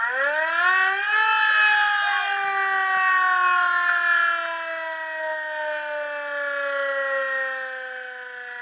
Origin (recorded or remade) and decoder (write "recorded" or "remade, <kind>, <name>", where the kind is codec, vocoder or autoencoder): recorded